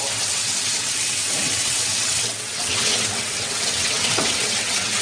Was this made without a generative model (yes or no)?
no